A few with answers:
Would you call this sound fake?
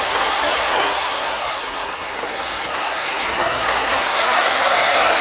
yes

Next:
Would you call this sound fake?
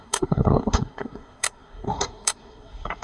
yes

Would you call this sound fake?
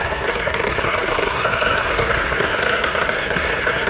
yes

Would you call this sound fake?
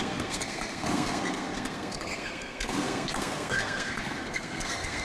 yes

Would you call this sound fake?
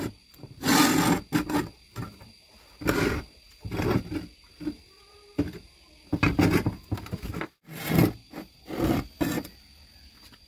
no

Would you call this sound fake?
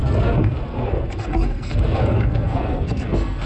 yes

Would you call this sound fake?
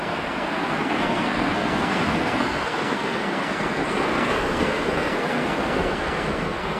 yes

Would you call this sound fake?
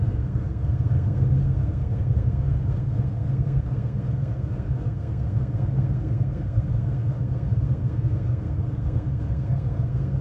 yes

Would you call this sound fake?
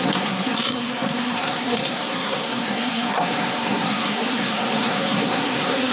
yes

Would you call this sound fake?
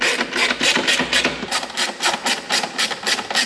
no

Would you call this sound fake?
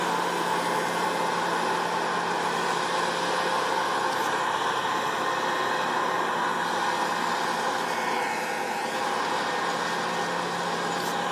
no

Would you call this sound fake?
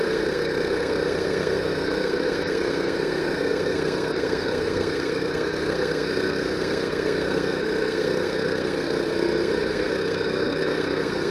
yes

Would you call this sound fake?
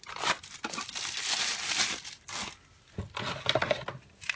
no